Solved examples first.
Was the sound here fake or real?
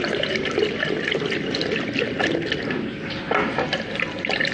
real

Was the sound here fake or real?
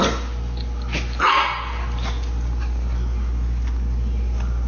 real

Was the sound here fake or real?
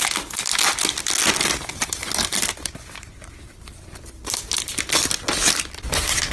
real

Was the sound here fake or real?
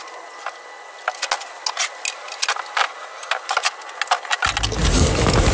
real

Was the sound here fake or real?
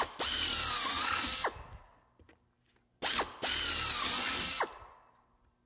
real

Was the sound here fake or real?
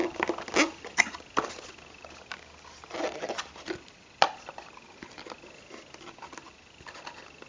real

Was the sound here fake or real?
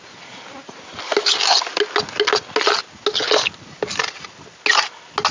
real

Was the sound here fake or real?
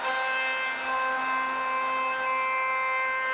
real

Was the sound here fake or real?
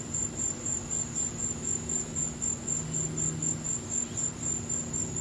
real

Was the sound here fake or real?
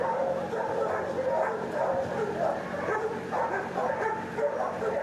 real